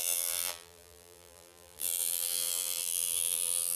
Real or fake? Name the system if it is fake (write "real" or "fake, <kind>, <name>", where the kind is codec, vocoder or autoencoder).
fake, vocoder, BigVGAN v2